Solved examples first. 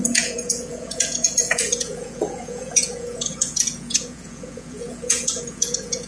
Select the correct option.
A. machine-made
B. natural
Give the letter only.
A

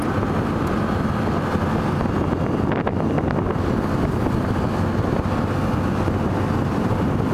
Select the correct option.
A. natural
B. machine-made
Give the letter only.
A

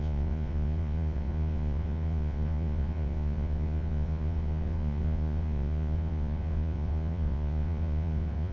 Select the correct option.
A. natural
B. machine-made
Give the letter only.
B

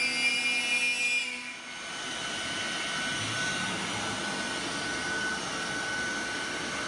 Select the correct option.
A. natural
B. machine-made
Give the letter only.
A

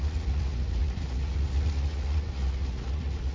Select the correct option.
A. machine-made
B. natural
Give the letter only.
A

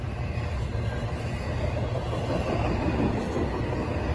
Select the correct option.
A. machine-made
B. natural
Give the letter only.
B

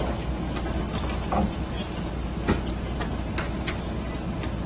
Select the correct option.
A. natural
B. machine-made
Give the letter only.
A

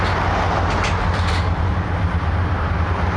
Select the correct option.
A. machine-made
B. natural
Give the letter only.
B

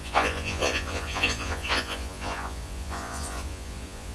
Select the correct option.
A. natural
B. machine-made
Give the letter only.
B